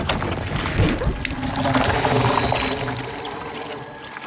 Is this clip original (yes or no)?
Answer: yes